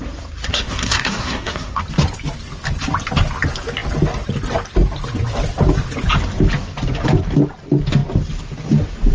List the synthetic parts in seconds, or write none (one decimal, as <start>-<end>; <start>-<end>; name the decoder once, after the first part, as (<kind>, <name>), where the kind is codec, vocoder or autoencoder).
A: 0.5-1.8 (codec, SNAC)